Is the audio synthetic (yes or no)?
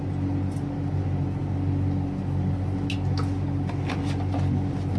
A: no